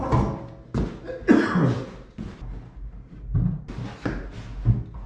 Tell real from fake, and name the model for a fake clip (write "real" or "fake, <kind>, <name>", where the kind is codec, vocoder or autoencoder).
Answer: real